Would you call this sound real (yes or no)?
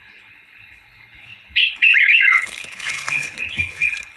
no